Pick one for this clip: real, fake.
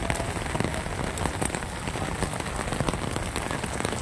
real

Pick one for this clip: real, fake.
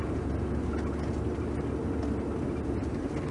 real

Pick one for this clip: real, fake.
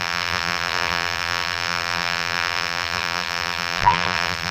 fake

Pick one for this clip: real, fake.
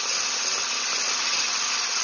real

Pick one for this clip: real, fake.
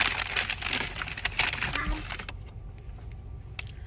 real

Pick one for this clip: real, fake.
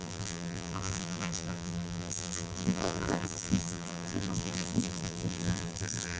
fake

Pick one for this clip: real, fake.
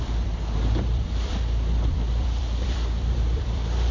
fake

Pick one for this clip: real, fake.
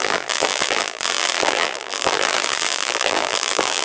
fake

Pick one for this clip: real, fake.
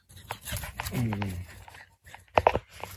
real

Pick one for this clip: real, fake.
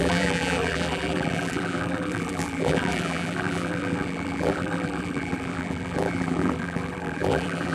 fake